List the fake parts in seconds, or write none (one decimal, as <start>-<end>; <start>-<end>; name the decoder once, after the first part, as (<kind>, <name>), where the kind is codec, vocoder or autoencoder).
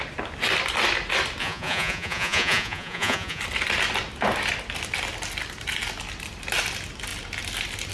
1.4-3.4 (vocoder, Vocos)